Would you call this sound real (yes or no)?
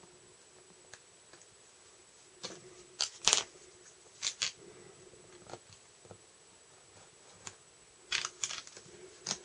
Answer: yes